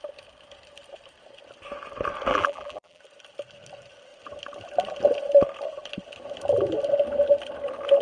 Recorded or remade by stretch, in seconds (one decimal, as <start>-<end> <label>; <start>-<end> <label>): 0.0-2.3 recorded; 2.3-3.0 remade; 3.0-8.0 recorded